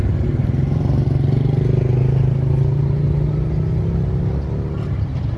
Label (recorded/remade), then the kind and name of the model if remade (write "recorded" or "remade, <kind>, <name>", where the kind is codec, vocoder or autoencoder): recorded